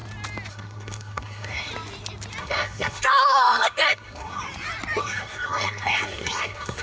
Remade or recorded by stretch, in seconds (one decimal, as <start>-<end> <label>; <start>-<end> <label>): 0.0-0.5 recorded; 0.5-1.7 remade; 1.7-2.4 recorded; 2.4-4.4 remade; 4.4-5.0 recorded; 5.0-6.8 remade